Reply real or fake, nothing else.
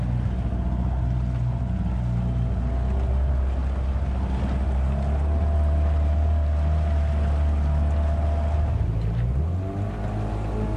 real